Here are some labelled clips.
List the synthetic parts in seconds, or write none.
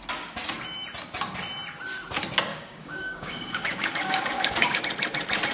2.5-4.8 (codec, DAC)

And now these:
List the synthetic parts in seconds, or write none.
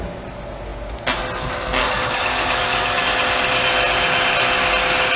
1.8-3.0 (codec, DAC)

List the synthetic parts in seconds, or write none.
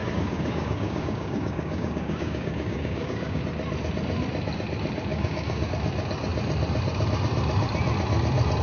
0.0-3.4 (codec, DAC); 5.1-5.7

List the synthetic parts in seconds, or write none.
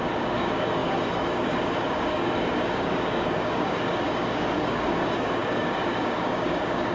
0.0-6.9 (codec, DAC)